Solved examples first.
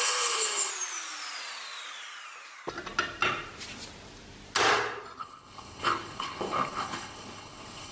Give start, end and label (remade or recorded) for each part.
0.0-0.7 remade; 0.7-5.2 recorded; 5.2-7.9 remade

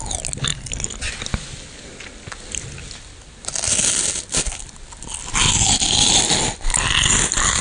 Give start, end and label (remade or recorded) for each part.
0.0-7.6 recorded

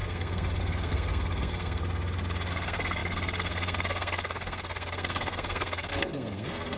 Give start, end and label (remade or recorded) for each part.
0.0-1.8 remade; 1.8-2.5 recorded; 2.5-6.8 remade